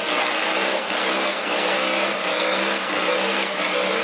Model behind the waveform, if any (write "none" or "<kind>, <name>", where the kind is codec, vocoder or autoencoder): codec, SNAC